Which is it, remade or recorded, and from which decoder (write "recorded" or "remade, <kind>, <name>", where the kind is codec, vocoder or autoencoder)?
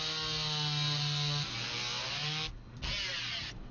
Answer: recorded